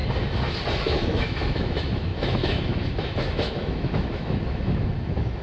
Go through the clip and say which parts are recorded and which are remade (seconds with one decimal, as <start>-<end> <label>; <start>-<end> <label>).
0.0-0.7 recorded; 0.7-5.4 remade